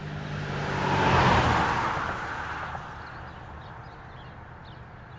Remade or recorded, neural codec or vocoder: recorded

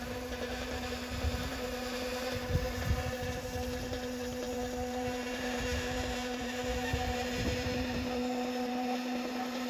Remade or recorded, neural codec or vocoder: remade, vocoder, BigVGAN v2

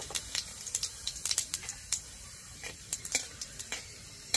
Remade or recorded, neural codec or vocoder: remade, vocoder, BigVGAN v2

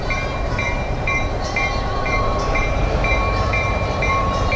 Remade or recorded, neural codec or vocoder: remade, vocoder, BigVGAN v2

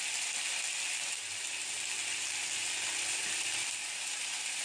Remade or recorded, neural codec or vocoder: recorded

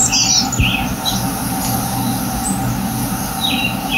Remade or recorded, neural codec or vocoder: recorded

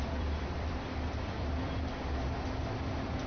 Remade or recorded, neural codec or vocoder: remade, vocoder, BigVGAN v2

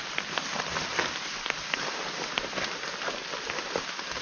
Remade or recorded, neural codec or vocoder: recorded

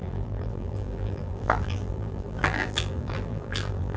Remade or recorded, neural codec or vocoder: remade, vocoder, BigVGAN v2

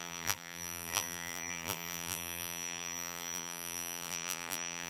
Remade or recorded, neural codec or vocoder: remade, vocoder, BigVGAN v2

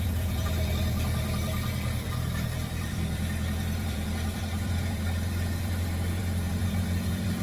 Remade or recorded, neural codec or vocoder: remade, vocoder, BigVGAN v2